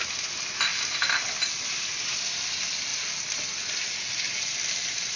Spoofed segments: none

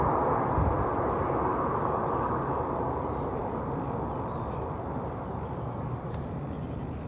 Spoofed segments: 1.5-2.1 (vocoder, BigVGAN v2)

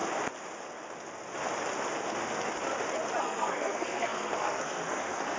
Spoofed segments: 3.2-5.4 (codec, SNAC)

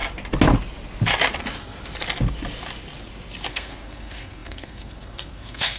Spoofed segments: 3.5-5.8 (codec, SNAC)

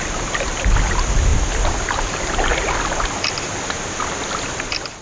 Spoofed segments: none

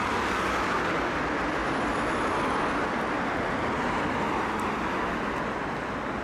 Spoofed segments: none

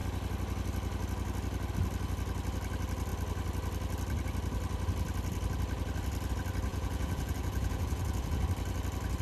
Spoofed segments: 6.7-8.4 (vocoder, Vocos)